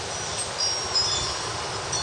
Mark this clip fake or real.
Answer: real